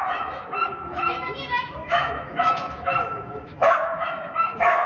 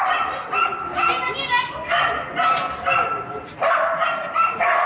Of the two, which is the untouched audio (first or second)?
second